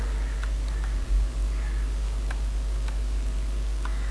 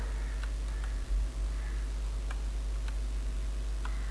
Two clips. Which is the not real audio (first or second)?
first